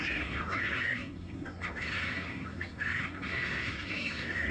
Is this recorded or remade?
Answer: remade